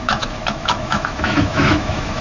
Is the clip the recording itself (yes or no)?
no